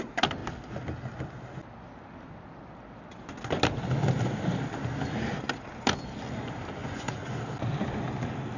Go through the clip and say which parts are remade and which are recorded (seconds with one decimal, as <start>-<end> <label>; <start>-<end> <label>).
0.0-6.8 recorded; 6.8-7.4 remade; 7.4-8.6 recorded